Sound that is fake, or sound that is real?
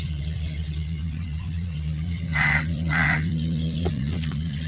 fake